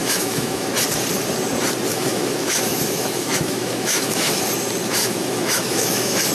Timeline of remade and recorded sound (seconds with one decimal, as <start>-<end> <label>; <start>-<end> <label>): 0.0-0.7 remade; 0.7-1.9 recorded; 1.9-4.4 remade; 4.4-5.0 recorded; 5.0-6.3 remade